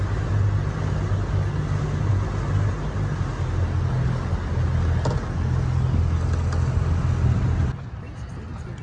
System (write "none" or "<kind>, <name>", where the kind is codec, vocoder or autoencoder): none